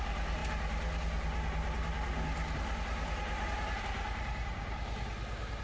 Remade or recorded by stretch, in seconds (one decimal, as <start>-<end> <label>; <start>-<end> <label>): 0.0-5.6 recorded